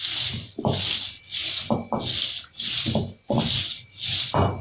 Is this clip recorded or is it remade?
recorded